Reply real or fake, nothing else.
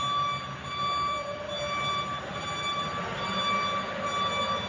real